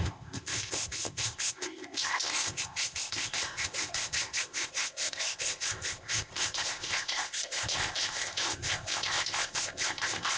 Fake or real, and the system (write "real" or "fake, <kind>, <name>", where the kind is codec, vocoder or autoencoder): fake, codec, ZipCodec